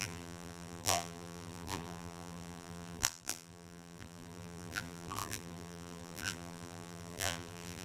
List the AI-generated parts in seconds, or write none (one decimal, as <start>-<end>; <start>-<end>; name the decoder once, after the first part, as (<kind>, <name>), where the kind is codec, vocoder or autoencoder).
0.0-7.8 (vocoder, BigVGAN v2)